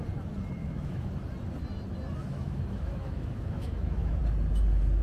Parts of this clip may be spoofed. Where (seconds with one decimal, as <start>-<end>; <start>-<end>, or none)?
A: 0.6-1.1; 2.2-4.2